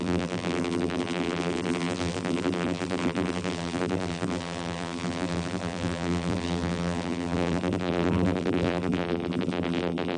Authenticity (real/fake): fake